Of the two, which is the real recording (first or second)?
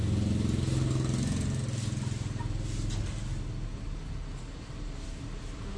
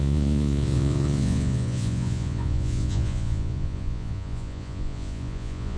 first